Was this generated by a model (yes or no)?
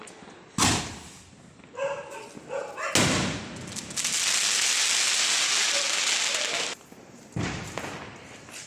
no